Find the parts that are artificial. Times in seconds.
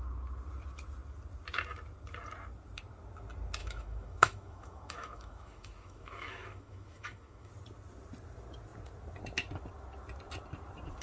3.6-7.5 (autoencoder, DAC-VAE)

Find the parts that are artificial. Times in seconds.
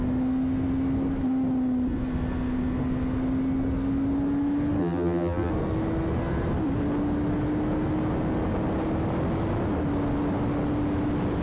4.8-5.5 (vocoder, BigVGAN v2)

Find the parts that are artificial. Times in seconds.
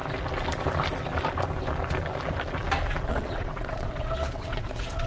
3.1-5.1 (vocoder, WaveNeXt)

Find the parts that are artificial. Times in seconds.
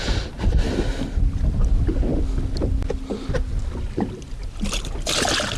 none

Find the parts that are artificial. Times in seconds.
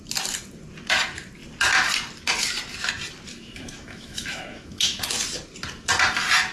3.3-5.0 (autoencoder, DAC-VAE)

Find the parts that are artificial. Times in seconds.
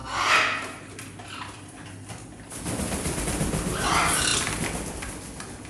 none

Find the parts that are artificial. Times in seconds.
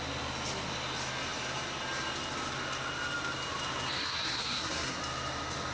4.0-5.0 (codec, SNAC)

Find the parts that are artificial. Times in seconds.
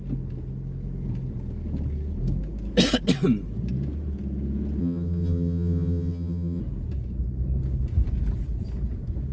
4.8-6.6 (vocoder, HiFi-GAN)